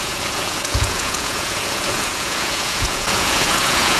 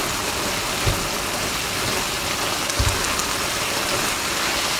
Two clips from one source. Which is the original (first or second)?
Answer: second